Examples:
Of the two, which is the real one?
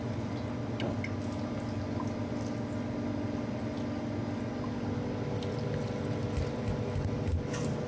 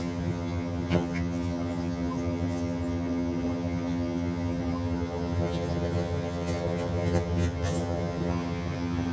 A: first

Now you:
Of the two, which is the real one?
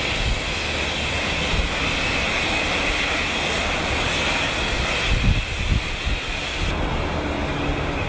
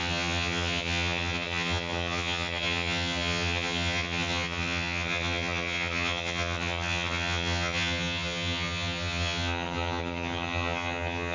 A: first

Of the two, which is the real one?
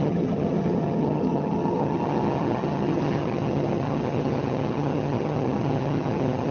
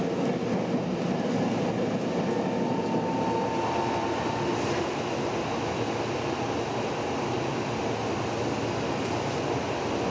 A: second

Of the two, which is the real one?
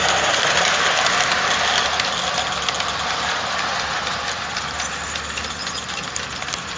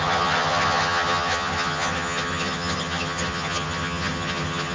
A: first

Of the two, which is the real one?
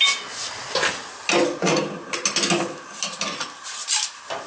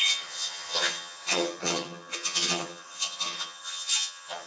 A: first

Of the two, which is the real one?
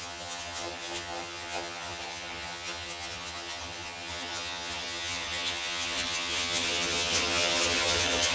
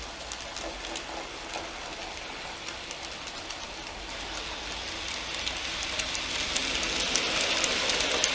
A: second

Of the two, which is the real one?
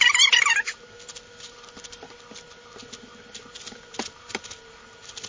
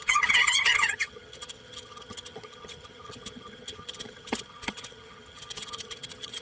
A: first